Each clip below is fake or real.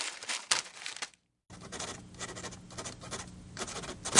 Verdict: real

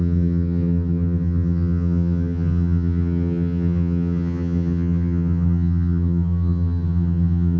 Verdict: fake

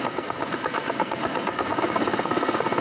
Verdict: fake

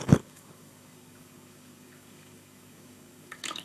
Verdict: fake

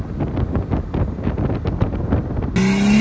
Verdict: real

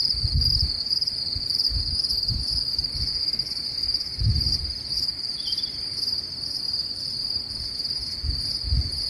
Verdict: real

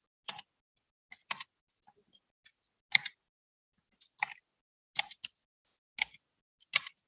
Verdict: real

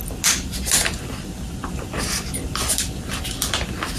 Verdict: real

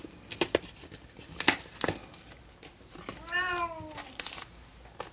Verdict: real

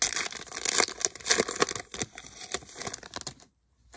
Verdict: real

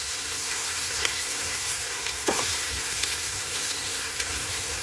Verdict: fake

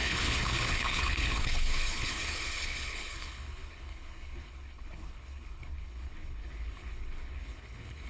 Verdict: fake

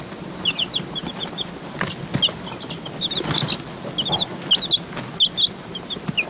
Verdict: real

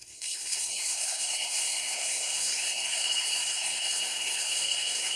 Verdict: fake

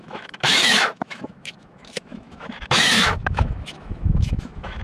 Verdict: fake